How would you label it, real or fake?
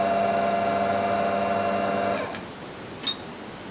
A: real